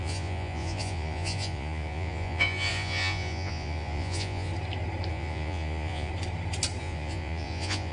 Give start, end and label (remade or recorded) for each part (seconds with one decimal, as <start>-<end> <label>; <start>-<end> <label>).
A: 0.0-4.5 remade; 4.5-5.1 recorded; 5.1-6.1 remade; 6.1-6.8 recorded; 6.8-7.9 remade